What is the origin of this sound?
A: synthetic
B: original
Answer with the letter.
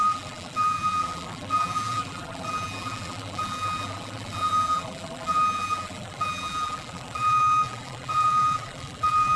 A